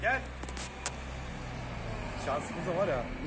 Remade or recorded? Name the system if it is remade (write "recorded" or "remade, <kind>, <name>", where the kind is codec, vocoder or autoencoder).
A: recorded